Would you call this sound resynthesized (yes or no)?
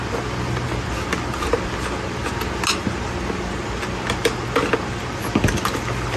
no